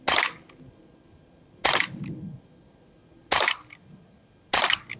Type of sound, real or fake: real